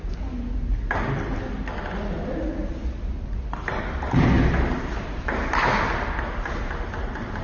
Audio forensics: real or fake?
real